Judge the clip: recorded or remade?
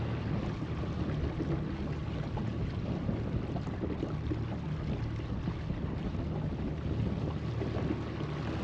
recorded